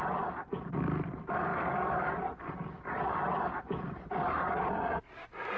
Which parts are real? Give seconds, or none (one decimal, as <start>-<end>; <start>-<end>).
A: 0.0-5.6